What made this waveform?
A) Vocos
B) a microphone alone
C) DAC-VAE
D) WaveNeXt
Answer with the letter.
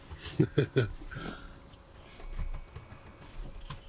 B